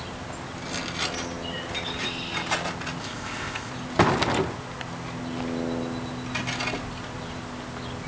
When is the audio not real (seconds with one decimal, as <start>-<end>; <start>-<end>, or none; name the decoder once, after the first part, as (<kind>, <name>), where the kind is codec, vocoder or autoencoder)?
3.0-3.7 (codec, ZipCodec)